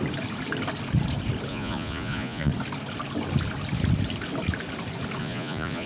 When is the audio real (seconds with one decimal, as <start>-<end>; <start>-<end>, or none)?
0.0-1.5; 2.5-5.2